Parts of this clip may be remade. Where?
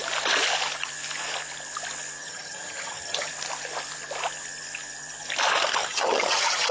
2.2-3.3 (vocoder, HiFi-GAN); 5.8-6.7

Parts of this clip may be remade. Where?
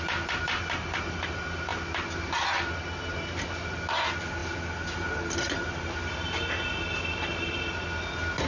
none